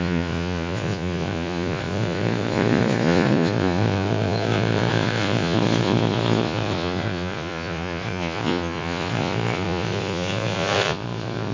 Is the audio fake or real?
fake